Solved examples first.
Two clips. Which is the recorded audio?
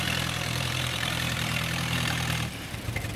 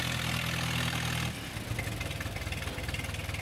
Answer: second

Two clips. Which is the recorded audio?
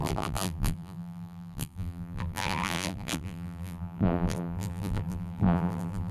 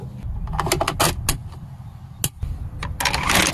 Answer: second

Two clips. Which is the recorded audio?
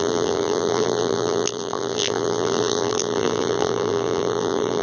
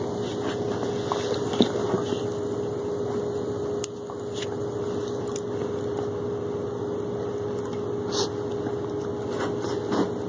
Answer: second